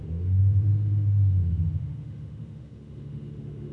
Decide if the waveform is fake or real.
fake